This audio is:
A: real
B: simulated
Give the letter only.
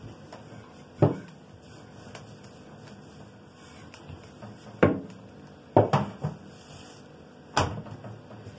A